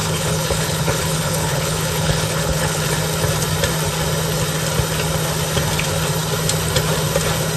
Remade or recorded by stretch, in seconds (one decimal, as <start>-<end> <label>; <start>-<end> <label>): 0.0-2.8 remade; 2.8-7.6 recorded